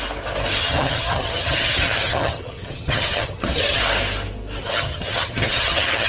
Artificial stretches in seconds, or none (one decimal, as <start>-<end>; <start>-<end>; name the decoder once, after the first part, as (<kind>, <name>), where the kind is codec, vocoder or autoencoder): 0.6-3.8 (vocoder, HiFi-GAN); 4.6-6.1